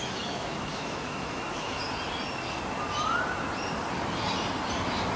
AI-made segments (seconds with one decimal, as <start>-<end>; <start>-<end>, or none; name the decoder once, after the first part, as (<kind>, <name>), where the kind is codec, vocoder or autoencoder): 0.0-1.8 (autoencoder, DAC-VAE)